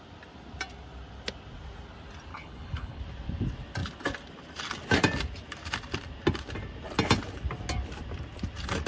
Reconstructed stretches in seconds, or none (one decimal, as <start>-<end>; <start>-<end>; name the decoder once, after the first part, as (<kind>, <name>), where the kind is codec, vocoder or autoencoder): 2.3-3.0 (codec, HILCodec)